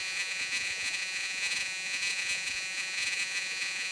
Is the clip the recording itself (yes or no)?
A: no